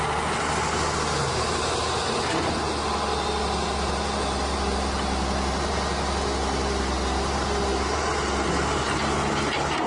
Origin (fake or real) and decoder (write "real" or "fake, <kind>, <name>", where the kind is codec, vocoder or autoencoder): real